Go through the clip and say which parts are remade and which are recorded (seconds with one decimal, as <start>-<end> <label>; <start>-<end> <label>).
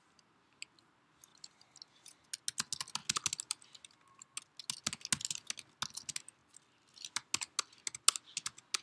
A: 0.0-8.8 recorded